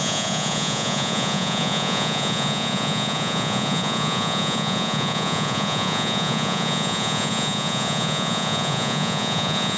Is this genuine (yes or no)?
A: no